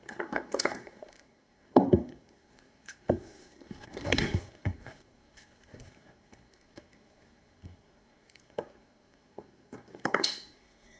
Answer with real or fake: fake